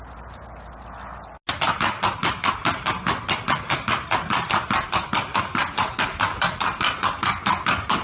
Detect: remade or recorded recorded